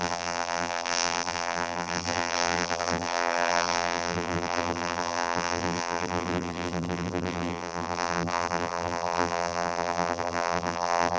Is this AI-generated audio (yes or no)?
yes